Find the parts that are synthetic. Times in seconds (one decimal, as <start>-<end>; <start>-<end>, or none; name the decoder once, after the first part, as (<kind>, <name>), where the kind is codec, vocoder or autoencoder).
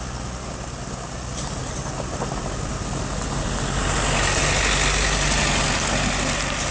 none